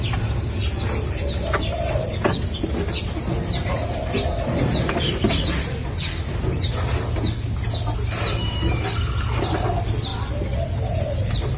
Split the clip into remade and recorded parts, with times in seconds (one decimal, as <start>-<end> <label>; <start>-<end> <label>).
0.0-11.6 recorded